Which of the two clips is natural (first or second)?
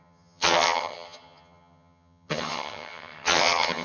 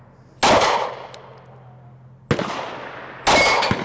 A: second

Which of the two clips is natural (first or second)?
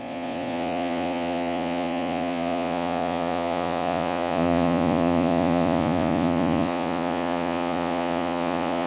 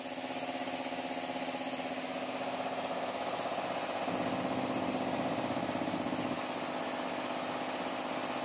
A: second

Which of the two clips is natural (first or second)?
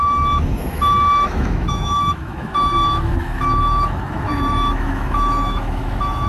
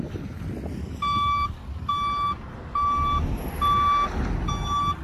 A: second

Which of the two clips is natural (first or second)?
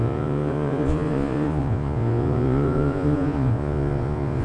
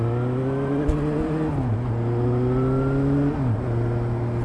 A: second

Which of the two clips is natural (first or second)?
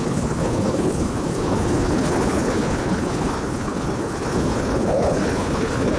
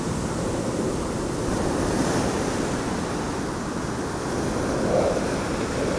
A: second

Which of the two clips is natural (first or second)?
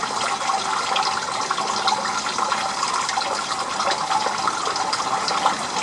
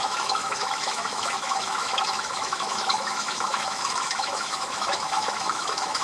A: first